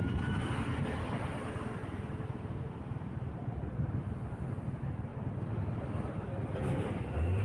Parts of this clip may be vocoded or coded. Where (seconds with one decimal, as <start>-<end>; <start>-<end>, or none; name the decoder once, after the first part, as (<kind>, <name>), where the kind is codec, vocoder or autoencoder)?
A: 1.8-3.9 (vocoder, BigVGAN v2)

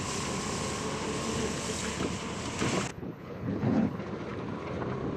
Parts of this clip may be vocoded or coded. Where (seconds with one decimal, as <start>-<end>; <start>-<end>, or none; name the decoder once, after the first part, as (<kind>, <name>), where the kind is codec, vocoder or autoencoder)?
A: 2.9-4.0 (codec, HILCodec)

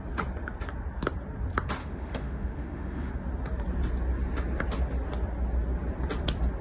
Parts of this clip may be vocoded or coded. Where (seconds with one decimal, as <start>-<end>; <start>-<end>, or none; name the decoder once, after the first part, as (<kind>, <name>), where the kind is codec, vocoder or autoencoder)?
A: 1.8-3.1 (autoencoder, DAC-VAE)

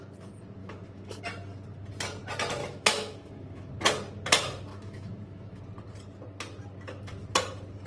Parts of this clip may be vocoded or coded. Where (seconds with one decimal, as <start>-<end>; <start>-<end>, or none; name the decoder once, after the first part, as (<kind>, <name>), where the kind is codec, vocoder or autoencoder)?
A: 0.6-1.2 (autoencoder, DAC-VAE); 2.6-3.7; 4.7-5.6

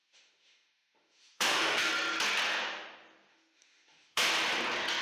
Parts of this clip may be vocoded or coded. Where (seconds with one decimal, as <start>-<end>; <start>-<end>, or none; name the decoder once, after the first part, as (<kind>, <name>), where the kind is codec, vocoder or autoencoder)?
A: 0.0-1.9 (autoencoder, DAC-VAE); 3.3-4.3

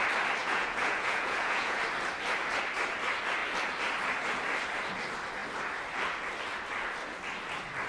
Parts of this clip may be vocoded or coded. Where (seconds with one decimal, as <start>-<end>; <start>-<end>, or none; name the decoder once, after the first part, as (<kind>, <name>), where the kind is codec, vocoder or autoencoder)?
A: 0.4-1.8 (vocoder, Vocos)

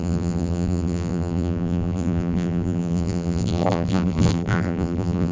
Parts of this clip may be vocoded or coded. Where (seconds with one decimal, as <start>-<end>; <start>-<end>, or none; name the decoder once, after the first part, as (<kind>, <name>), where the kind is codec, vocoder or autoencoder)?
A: 0.0-5.3 (vocoder, BigVGAN v2)